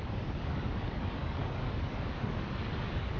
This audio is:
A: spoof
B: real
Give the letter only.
A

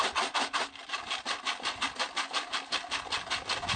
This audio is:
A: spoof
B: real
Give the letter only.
B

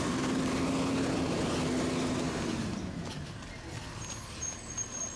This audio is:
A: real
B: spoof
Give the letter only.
A